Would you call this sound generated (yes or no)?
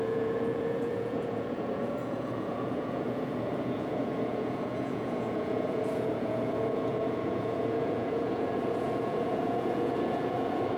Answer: yes